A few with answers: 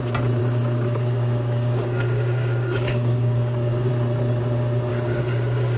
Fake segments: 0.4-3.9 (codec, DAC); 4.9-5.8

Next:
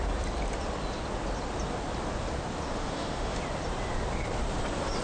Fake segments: 2.8-3.4 (autoencoder, DAC-VAE)

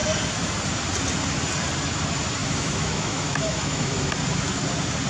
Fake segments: 2.4-4.1 (autoencoder, DAC-VAE)

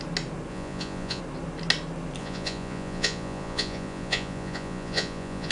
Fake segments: 0.5-1.2 (vocoder, Vocos); 2.2-5.5

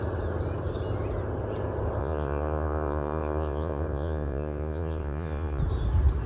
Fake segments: 2.0-5.6 (vocoder, Vocos)

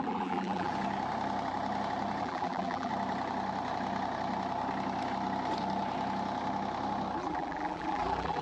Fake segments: 0.0-0.7 (vocoder, BigVGAN v2); 2.2-2.9; 7.2-8.4